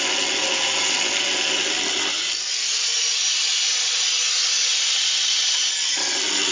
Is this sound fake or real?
real